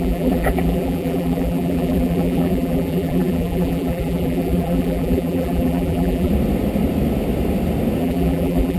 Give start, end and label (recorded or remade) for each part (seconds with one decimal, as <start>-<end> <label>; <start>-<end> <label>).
0.0-6.3 remade; 6.3-8.0 recorded; 8.0-8.8 remade